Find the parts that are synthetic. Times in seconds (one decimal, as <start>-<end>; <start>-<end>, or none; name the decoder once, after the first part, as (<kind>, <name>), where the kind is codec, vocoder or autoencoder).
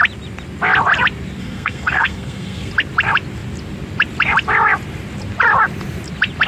1.4-2.7 (codec, SNAC)